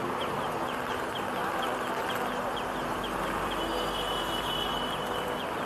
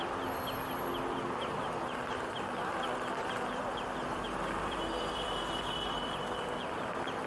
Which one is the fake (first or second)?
second